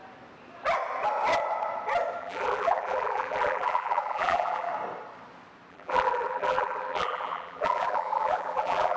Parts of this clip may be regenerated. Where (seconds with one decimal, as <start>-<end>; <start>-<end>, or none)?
2.2-4.7; 5.7-9.0